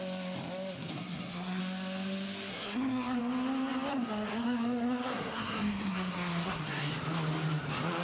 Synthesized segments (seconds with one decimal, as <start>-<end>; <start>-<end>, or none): 0.9-1.6; 2.5-3.2; 3.9-6.9